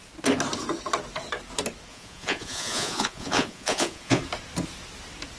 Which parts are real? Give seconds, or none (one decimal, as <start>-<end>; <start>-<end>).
0.0-1.9; 4.2-5.4